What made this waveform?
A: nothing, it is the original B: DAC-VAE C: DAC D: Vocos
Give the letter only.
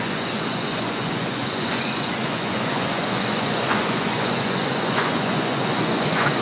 D